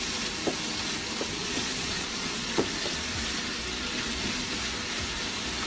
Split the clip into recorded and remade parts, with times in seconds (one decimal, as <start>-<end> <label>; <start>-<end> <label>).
0.0-1.4 recorded; 1.4-2.6 remade; 2.6-5.7 recorded